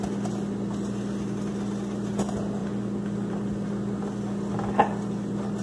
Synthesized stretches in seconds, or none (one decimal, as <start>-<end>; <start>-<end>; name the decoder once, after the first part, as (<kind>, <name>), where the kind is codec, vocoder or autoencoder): none